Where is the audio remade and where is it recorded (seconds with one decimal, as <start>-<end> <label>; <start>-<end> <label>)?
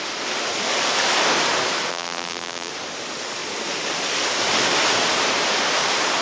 0.0-1.9 recorded; 1.9-2.7 remade; 2.7-6.2 recorded